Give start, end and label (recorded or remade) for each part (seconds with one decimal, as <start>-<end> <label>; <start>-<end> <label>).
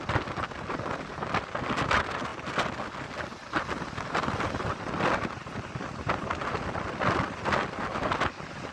0.0-8.7 recorded